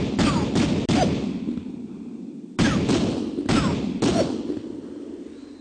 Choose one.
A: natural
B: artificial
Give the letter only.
A